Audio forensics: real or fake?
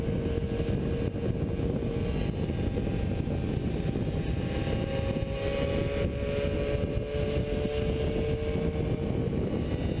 real